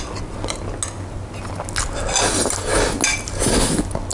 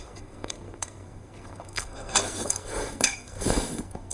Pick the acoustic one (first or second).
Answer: first